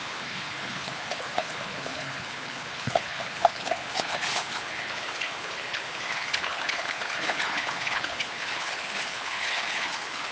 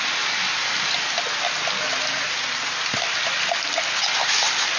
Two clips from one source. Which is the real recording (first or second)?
second